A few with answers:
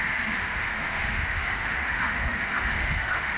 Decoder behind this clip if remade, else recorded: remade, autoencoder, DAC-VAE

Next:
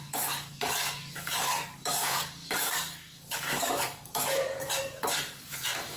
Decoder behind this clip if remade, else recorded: remade, codec, DAC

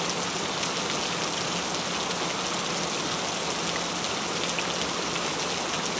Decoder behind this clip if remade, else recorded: recorded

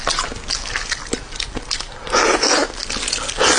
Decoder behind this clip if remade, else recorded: recorded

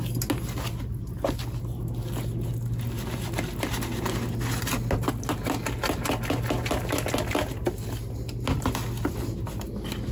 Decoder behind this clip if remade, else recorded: recorded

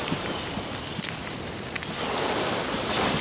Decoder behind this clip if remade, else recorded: recorded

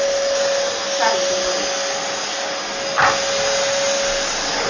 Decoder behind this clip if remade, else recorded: recorded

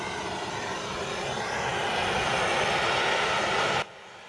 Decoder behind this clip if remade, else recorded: recorded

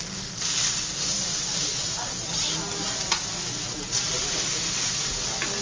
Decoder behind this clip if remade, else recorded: recorded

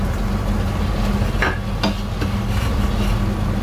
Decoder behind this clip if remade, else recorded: recorded